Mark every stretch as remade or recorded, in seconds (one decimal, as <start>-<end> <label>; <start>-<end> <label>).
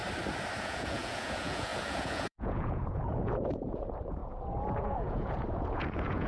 0.0-0.6 recorded; 0.6-6.3 remade